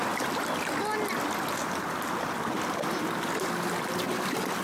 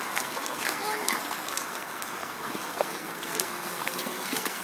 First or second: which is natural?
first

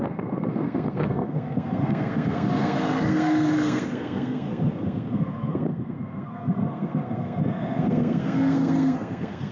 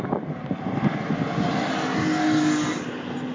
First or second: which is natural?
second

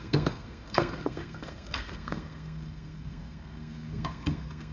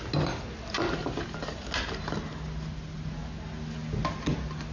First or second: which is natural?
second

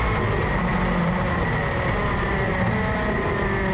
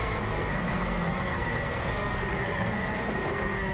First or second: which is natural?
first